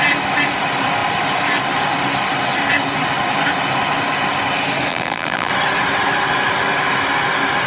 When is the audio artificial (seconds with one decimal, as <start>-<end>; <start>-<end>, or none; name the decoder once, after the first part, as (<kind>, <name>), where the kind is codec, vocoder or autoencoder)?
4.9-5.5 (vocoder, BigVGAN v2)